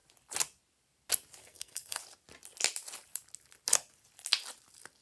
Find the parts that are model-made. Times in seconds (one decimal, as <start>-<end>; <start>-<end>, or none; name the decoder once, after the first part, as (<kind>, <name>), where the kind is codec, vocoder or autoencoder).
1.4-2.0 (codec, SNAC)